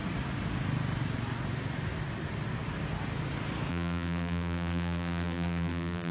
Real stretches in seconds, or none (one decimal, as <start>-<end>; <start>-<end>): 0.0-3.7